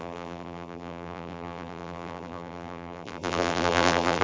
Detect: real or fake fake